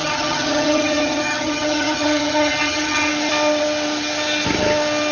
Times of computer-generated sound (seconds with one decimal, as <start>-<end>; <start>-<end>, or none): 0.0-3.1